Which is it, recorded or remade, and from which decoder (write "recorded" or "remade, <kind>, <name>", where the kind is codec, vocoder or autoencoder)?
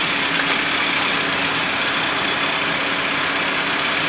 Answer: recorded